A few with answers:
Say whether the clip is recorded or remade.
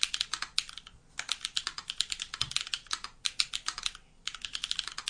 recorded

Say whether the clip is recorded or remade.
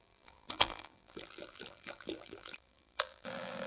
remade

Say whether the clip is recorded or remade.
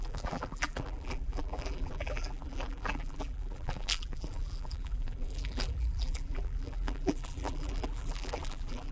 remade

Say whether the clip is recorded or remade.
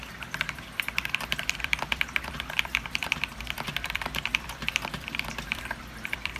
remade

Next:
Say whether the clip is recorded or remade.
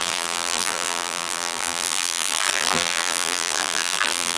remade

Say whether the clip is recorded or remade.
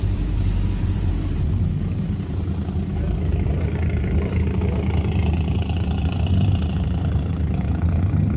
remade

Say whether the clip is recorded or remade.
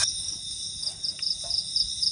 recorded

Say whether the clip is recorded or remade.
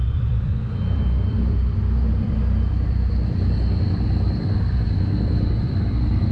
remade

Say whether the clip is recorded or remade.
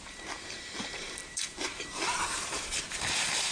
remade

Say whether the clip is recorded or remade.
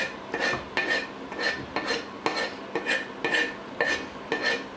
recorded